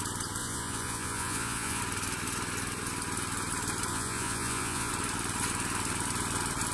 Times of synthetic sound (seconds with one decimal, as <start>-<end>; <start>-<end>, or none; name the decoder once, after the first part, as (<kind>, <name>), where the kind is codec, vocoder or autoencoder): 0.4-1.8 (vocoder, Vocos); 3.9-4.9